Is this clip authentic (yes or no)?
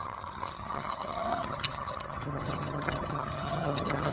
no